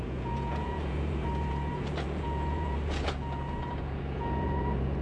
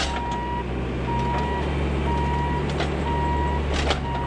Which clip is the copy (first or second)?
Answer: first